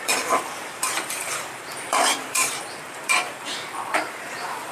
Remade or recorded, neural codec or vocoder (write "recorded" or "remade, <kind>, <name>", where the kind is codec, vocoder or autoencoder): remade, vocoder, BigVGAN v2